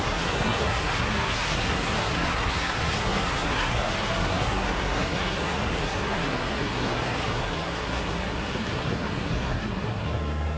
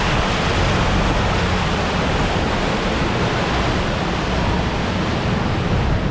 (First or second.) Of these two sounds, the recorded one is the second